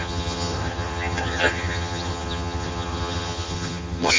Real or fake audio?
fake